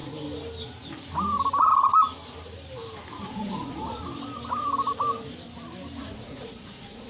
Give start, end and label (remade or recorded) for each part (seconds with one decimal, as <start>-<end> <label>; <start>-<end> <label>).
0.0-3.3 recorded; 3.3-4.0 remade; 4.0-6.0 recorded; 6.0-7.1 remade